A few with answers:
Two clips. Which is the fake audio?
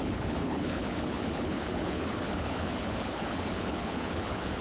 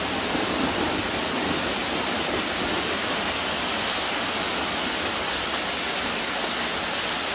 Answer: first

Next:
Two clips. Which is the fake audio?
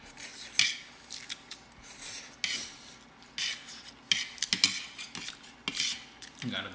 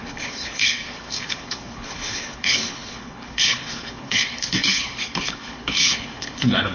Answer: second